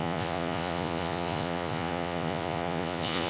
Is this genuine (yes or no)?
no